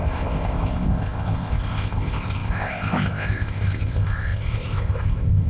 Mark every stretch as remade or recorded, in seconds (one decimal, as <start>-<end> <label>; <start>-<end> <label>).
0.0-5.5 remade

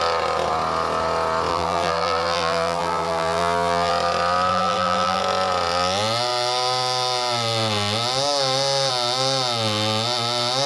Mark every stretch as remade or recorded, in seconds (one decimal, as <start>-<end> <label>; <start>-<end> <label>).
0.0-1.5 recorded; 1.5-3.9 remade; 3.9-4.5 recorded; 4.5-5.2 remade; 5.2-10.7 recorded

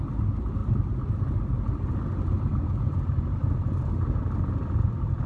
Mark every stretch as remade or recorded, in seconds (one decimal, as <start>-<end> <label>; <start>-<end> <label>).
0.0-5.3 recorded

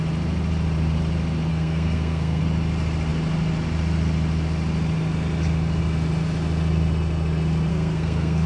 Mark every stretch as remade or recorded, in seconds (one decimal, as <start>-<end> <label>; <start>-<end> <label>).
0.0-1.5 recorded; 1.5-2.4 remade; 2.4-7.7 recorded; 7.7-8.5 remade

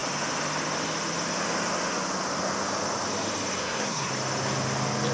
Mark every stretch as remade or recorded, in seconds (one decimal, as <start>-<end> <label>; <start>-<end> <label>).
0.0-3.6 recorded; 3.6-4.1 remade; 4.1-5.1 recorded